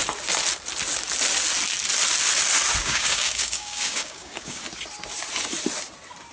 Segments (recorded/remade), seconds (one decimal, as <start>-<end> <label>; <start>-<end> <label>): 0.0-2.8 recorded; 2.8-4.6 remade; 4.6-6.3 recorded